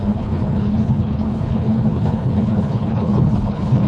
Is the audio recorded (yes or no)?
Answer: no